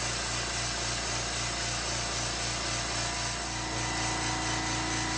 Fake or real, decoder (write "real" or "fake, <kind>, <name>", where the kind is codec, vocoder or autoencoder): real